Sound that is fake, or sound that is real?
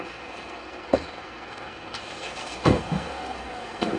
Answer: fake